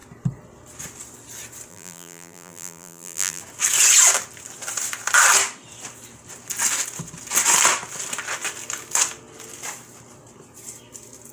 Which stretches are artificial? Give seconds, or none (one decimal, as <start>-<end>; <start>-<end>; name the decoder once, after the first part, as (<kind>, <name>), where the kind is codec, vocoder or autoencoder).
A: 1.7-3.4 (vocoder, BigVGAN v2)